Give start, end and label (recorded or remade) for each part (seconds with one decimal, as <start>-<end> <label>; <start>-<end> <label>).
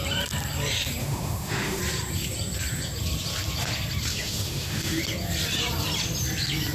0.0-1.0 recorded; 1.0-1.8 remade; 1.8-4.1 recorded; 4.1-5.0 remade; 5.0-6.7 recorded